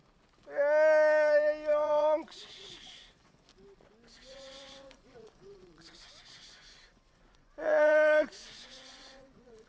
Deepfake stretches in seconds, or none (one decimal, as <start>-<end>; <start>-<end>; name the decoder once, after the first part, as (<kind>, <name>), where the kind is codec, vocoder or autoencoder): 1.7-3.5 (vocoder, Vocos); 4.3-9.7